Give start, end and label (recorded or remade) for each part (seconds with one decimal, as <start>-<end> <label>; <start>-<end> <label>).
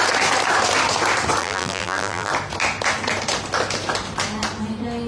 0.0-1.4 recorded; 1.4-2.3 remade; 2.3-5.1 recorded